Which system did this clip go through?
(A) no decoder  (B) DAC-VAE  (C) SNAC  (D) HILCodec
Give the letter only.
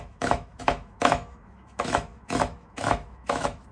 B